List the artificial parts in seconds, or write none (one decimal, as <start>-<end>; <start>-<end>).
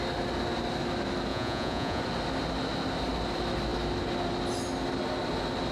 1.3-2.0